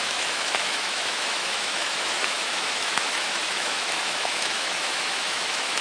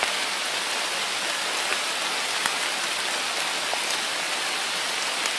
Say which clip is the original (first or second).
second